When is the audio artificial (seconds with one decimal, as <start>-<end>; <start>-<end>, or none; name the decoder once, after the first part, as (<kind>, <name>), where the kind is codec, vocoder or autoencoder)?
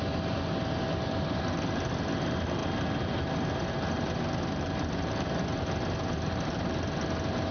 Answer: none